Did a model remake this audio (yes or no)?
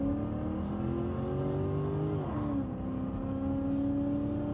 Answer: no